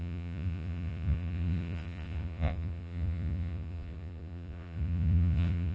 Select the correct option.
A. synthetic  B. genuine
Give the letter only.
A